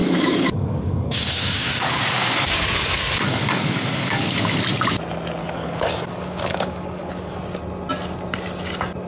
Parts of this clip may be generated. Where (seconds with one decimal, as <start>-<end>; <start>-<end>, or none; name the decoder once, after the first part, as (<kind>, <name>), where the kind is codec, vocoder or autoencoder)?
0.0-4.6 (codec, DAC); 5.4-7.4

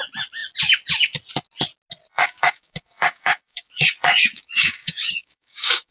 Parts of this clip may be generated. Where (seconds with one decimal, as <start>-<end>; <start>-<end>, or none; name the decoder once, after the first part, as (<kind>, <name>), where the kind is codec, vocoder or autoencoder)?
2.1-5.9 (codec, DAC)

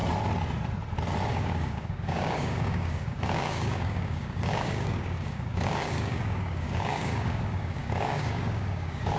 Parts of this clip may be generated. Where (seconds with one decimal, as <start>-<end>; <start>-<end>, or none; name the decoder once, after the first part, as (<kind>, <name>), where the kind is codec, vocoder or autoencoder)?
1.3-9.2 (codec, DAC)

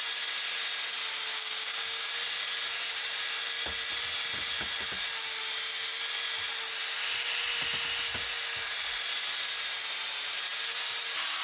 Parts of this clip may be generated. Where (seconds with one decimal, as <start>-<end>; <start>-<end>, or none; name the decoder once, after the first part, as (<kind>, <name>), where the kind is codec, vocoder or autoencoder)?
1.3-2.1 (codec, DAC)

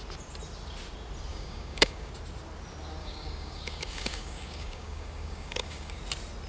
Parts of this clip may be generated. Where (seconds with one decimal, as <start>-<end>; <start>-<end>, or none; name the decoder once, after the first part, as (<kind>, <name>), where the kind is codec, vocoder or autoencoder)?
1.3-2.1 (codec, DAC); 3.0-6.0

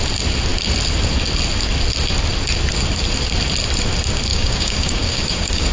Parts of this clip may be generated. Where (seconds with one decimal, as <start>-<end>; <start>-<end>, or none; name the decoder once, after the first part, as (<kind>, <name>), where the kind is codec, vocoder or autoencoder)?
4.3-5.7 (codec, DAC)

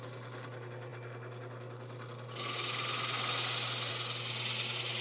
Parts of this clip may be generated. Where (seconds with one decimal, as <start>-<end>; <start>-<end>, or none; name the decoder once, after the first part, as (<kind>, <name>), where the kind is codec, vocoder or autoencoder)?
none